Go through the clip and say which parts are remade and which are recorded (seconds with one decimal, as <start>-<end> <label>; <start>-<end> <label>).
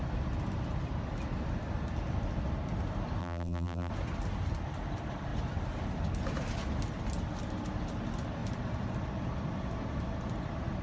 0.0-3.2 recorded; 3.2-3.9 remade; 3.9-10.8 recorded